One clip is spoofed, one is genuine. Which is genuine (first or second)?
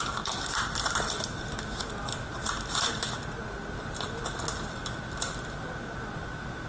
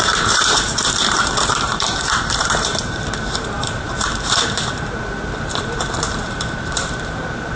first